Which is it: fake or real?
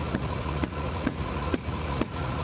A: fake